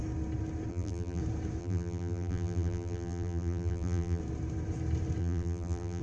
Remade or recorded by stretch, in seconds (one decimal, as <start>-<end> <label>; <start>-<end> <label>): 0.0-0.7 recorded; 0.7-1.2 remade; 1.2-1.6 recorded; 1.6-4.2 remade; 4.2-5.2 recorded; 5.2-6.0 remade